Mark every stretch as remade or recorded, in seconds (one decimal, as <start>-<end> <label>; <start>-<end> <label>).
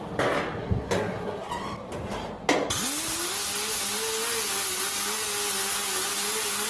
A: 0.0-0.6 recorded; 0.6-1.5 remade; 1.5-6.7 recorded